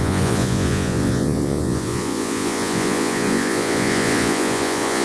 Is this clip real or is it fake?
fake